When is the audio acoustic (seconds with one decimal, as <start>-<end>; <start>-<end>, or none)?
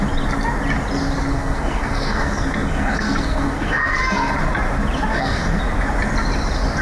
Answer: 0.0-1.3; 4.3-5.1; 5.6-6.8